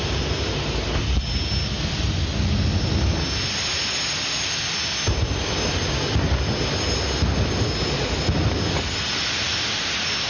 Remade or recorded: recorded